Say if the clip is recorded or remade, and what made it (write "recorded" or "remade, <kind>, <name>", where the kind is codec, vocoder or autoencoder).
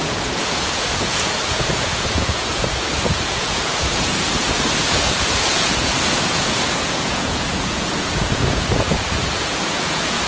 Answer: remade, vocoder, Vocos